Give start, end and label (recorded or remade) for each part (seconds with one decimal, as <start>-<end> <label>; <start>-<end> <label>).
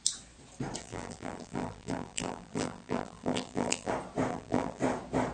0.0-0.8 recorded; 0.8-3.9 remade; 3.9-4.3 recorded; 4.3-4.8 remade; 4.8-5.3 recorded